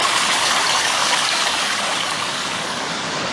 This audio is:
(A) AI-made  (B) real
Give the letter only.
A